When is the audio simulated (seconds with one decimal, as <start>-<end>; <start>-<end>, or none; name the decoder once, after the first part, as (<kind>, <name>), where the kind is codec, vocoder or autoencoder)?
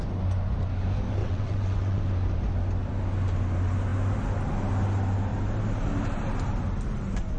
1.2-2.0 (vocoder, WaveNeXt)